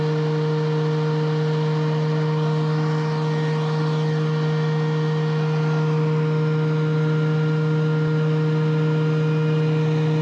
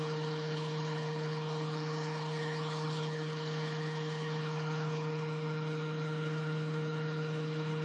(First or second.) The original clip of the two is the first